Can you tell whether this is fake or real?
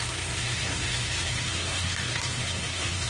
fake